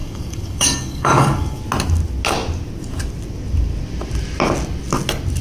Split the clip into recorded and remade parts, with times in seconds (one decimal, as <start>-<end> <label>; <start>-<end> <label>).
0.0-1.6 remade; 1.6-5.4 recorded